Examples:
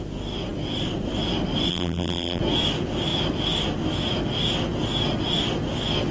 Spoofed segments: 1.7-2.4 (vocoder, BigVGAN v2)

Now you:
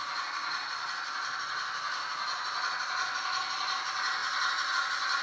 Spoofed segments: 0.6-1.5 (vocoder, BigVGAN v2)

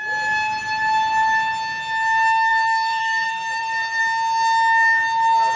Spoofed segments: 2.5-4.0 (vocoder, BigVGAN v2)

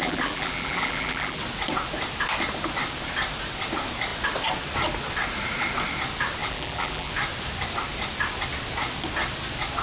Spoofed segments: 0.0-1.4 (vocoder, BigVGAN v2); 6.4-7.1